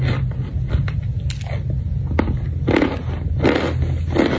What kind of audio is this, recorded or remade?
recorded